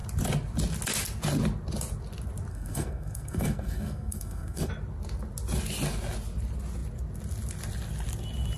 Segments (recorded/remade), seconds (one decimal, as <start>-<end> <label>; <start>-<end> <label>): 0.0-2.5 recorded; 2.5-4.7 remade; 4.7-8.6 recorded

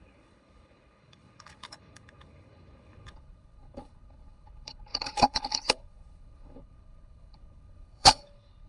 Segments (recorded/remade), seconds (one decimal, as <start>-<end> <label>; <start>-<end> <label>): 0.0-8.7 remade

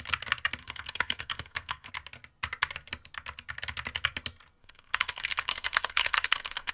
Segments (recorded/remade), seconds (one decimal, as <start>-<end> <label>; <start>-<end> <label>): 0.0-0.6 recorded; 0.6-1.9 remade; 1.9-4.6 recorded; 4.6-6.7 remade